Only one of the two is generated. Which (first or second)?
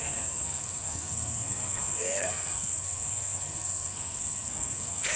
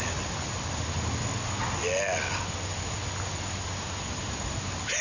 first